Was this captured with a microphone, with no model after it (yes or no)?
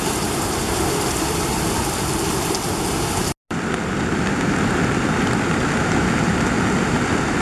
yes